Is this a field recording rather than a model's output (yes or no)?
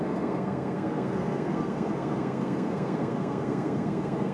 no